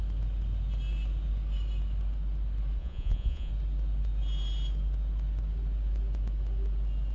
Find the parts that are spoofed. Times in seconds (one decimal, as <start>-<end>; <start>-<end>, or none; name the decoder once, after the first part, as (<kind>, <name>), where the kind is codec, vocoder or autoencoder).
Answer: 2.8-3.5 (vocoder, Vocos)